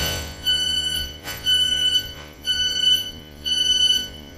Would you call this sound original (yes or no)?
no